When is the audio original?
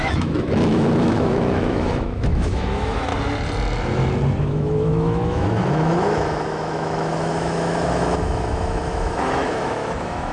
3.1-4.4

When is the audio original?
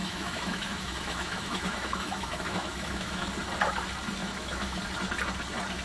3.3-4.2; 4.8-5.8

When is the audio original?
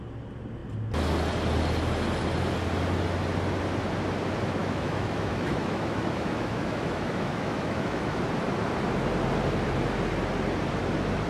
0.0-4.6; 8.2-11.3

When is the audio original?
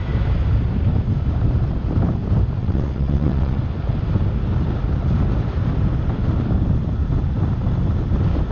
0.0-2.6; 3.6-8.5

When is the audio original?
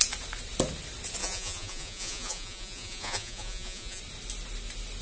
0.0-1.2; 4.0-5.0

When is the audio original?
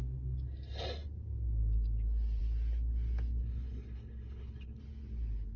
0.0-3.4; 4.8-5.6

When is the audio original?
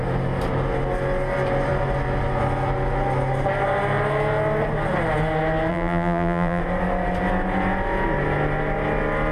0.0-5.7; 6.6-9.3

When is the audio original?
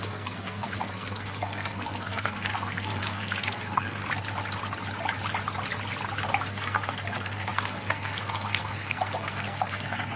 4.0-6.5